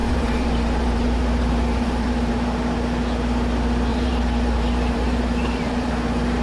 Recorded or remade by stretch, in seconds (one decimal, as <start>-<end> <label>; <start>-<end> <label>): 0.0-2.3 remade; 2.3-3.9 recorded; 3.9-5.9 remade; 5.9-6.4 recorded